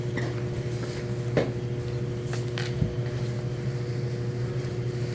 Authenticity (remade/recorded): recorded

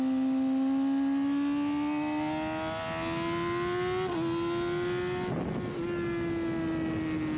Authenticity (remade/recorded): recorded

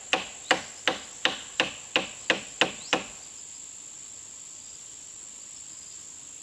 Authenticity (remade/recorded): recorded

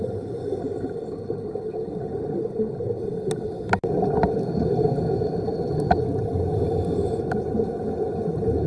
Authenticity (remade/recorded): recorded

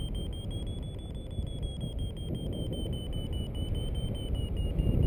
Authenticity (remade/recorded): recorded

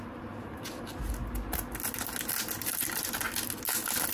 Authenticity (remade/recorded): recorded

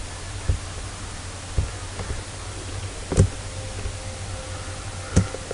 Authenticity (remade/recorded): recorded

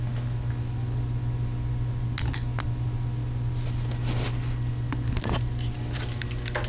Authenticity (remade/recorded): recorded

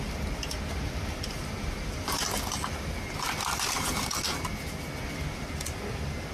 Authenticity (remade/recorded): recorded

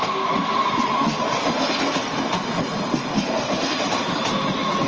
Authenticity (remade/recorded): recorded